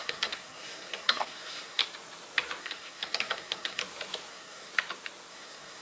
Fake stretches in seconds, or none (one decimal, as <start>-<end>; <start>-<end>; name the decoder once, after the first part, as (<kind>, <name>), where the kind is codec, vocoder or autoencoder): 0.0-1.8 (codec, SNAC); 2.6-3.8; 4.3-4.7; 5.3-5.8